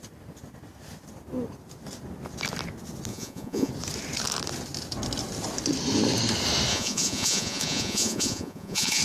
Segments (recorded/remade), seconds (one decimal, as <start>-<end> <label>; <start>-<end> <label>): 0.0-3.1 recorded; 3.1-3.7 remade; 3.7-6.7 recorded; 6.7-9.0 remade

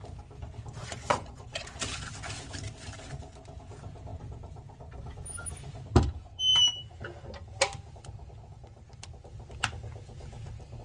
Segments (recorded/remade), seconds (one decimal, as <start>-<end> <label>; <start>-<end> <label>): 0.0-0.8 recorded; 0.8-1.6 remade; 1.6-10.8 recorded

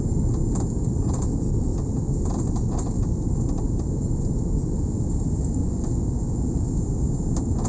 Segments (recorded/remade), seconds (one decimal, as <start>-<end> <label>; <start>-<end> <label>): 0.0-5.6 recorded; 5.6-6.7 remade; 6.7-7.7 recorded

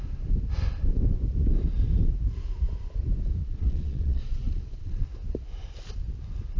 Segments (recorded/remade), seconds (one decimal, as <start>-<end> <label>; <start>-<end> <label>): 0.0-3.4 recorded; 3.4-5.1 remade; 5.1-6.6 recorded

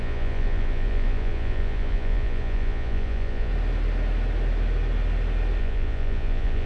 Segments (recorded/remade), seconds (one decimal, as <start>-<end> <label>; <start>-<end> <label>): 0.0-3.5 remade; 3.5-5.6 recorded; 5.6-6.7 remade

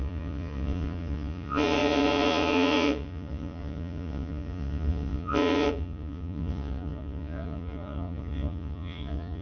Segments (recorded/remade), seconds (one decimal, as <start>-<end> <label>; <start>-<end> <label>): 0.0-9.4 remade